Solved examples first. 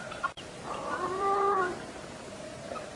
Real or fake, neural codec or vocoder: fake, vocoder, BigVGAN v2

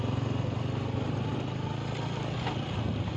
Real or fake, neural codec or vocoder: real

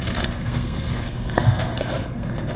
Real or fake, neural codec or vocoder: fake, codec, SNAC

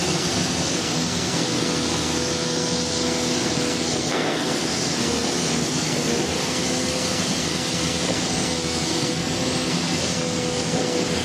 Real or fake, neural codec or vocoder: fake, codec, SNAC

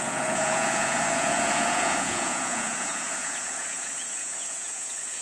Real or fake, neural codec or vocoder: fake, vocoder, Vocos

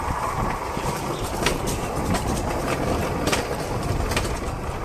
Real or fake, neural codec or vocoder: real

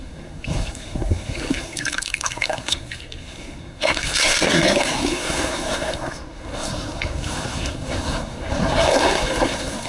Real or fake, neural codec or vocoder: fake, codec, SNAC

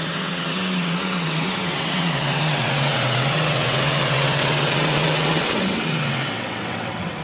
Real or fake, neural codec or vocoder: fake, vocoder, WaveNeXt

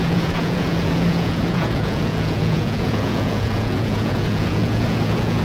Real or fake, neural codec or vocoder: fake, vocoder, Vocos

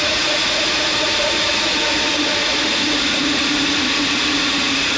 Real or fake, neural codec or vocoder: fake, vocoder, Vocos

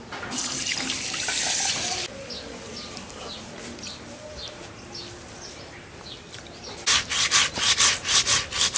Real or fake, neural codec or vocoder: real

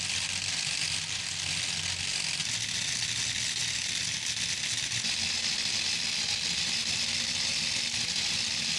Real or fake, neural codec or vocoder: real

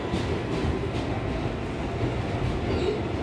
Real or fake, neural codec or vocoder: real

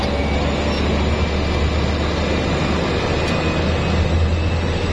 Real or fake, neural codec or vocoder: real